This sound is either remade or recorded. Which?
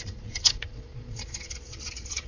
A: remade